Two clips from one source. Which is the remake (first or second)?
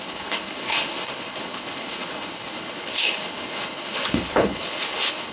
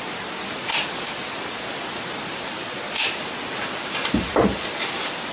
first